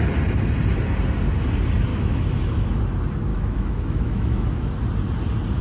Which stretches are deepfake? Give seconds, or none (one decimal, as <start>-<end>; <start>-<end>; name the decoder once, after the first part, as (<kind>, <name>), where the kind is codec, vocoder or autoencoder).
1.9-2.8 (autoencoder, DAC-VAE); 3.3-4.7